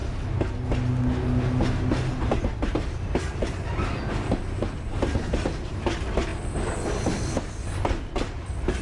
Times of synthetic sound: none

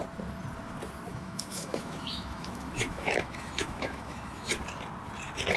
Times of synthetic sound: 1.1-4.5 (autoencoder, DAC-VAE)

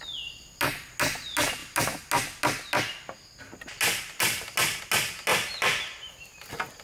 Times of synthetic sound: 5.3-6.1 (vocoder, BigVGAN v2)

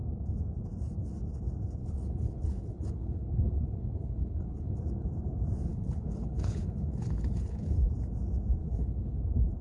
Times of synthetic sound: 1.8-4.8 (codec, HILCodec); 5.7-7.9; 8.6-9.2

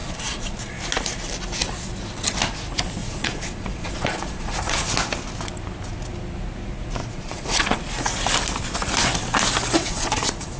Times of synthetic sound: 0.0-0.8 (vocoder, Vocos); 3.0-4.8; 7.0-7.8; 9.8-10.6

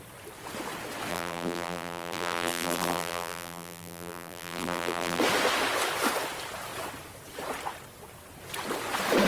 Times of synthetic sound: 1.1-5.2 (vocoder, BigVGAN v2)